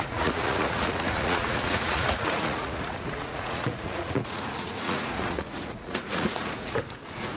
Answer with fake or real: fake